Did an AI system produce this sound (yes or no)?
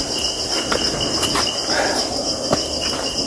no